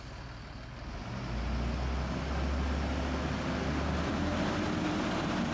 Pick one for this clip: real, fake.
real